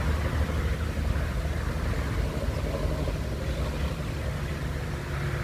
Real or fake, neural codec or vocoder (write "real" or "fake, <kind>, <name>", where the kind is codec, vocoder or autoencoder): real